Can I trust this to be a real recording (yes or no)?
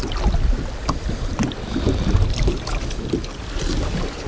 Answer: yes